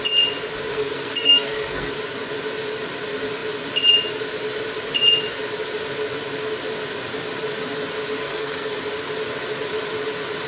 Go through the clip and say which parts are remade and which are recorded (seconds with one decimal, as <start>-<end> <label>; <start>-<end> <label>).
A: 0.0-0.7 recorded; 0.7-1.9 remade; 1.9-8.2 recorded; 8.2-8.8 remade; 8.8-10.5 recorded